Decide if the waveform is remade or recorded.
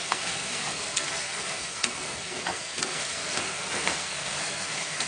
remade